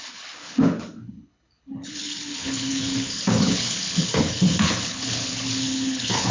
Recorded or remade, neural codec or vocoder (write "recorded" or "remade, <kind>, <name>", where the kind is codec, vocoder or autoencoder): remade, codec, HILCodec